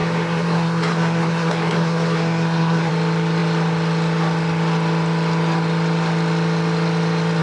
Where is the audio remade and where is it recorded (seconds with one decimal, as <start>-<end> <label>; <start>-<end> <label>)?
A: 0.0-2.9 remade; 2.9-7.4 recorded